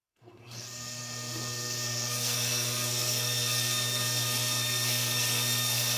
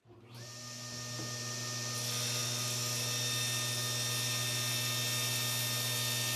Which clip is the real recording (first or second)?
second